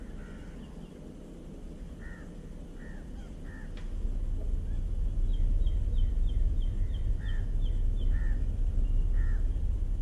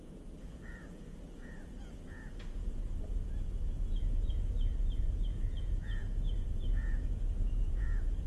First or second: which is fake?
second